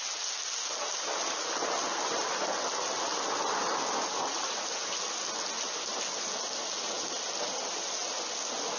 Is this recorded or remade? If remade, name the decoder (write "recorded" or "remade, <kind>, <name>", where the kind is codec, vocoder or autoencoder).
recorded